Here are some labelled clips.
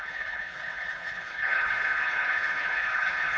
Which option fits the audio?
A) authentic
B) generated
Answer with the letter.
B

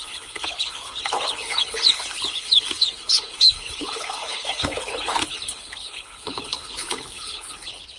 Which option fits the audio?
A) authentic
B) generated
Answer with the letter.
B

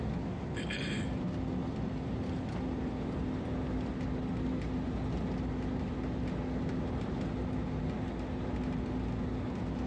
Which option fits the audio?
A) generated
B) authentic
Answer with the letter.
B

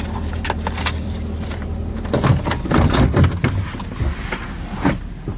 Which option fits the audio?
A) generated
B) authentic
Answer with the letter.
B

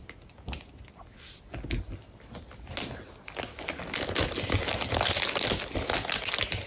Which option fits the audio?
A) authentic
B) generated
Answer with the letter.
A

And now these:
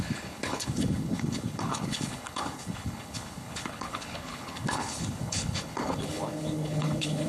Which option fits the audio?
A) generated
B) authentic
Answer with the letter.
A